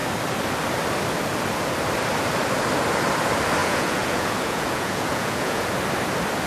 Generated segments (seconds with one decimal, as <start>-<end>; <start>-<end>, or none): 3.6-5.7